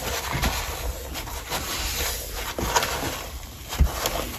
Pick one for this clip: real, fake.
real